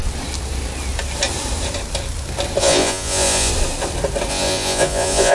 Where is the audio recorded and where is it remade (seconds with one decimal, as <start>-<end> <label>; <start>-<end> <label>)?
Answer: 0.0-2.6 recorded; 2.6-3.5 remade; 3.5-4.3 recorded; 4.3-5.3 remade